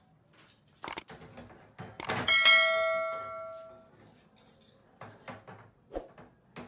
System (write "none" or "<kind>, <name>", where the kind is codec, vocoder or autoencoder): none